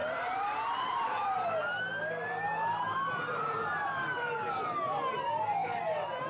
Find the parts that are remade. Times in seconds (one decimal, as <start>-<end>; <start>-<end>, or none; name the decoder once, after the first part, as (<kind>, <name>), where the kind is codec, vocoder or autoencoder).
0.0-1.8 (vocoder, BigVGAN v2); 2.9-3.7